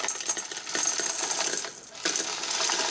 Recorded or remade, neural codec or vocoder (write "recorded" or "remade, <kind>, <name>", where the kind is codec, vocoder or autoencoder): recorded